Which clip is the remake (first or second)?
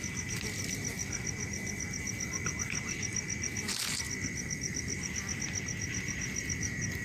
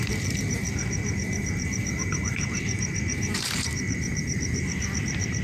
second